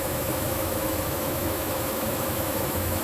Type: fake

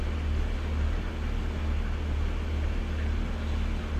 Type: real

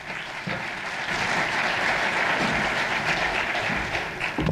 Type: real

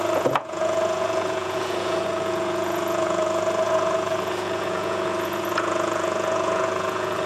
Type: fake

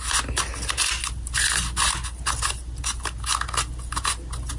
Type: real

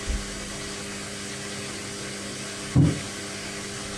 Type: real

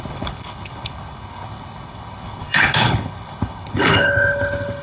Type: fake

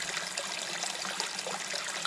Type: real